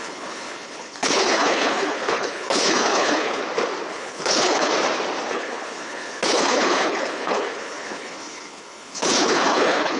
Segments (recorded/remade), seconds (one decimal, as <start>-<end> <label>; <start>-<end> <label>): 0.0-3.4 remade; 3.4-3.9 recorded; 3.9-4.7 remade; 4.7-5.3 recorded; 5.3-10.0 remade